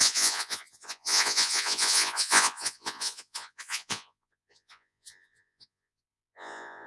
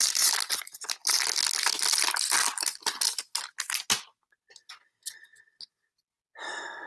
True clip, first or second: second